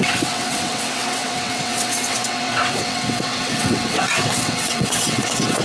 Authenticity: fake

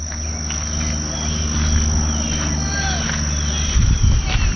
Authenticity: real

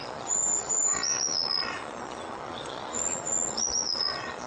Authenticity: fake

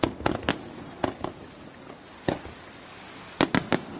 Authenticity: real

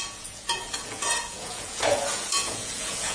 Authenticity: fake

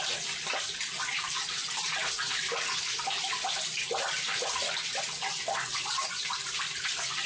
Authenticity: real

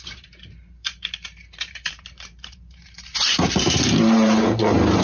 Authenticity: fake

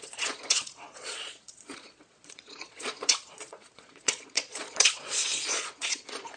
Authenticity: fake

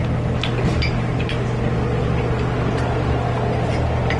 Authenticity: real